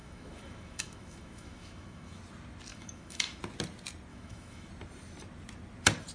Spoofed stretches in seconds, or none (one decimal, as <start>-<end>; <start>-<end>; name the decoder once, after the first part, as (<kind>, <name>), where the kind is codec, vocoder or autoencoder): 0.0-2.2 (autoencoder, DAC-VAE); 2.7-3.4; 4.1-4.7